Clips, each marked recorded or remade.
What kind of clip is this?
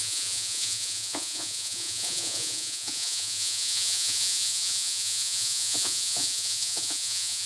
remade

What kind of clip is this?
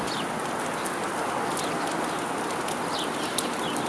recorded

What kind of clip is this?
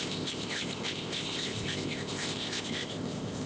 remade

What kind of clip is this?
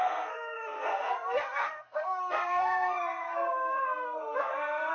remade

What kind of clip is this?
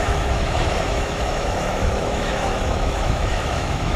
remade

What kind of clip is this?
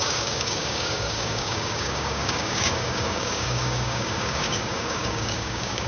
remade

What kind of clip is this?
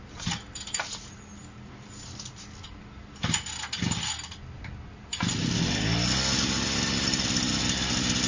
recorded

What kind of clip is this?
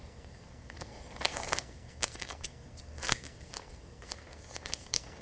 remade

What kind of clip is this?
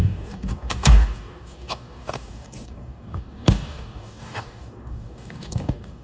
remade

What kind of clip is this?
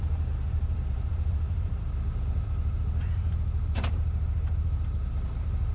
remade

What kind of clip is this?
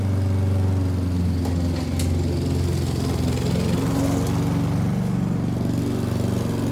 recorded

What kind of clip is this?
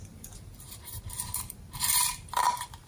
remade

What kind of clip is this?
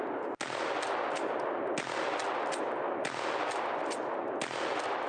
recorded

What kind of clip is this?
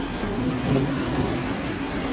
remade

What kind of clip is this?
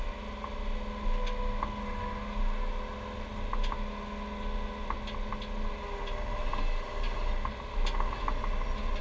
recorded